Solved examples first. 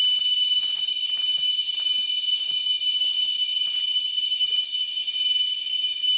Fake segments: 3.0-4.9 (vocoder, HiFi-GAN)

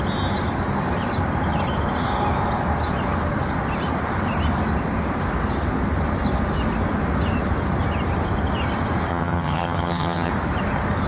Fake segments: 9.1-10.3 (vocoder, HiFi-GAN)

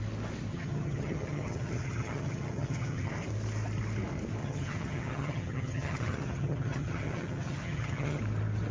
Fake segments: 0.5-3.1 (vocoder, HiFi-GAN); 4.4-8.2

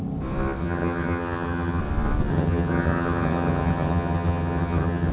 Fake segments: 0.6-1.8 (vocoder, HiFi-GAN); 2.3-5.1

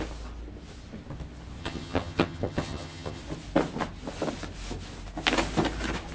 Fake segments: 1.6-3.2 (vocoder, HiFi-GAN)